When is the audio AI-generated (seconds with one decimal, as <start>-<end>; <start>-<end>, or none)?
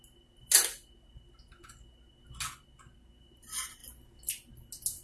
none